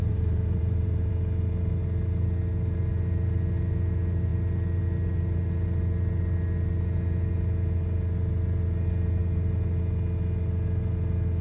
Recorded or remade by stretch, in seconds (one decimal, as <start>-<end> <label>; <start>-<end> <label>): 0.0-1.1 remade; 1.1-11.4 recorded